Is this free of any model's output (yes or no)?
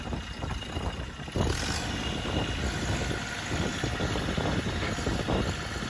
yes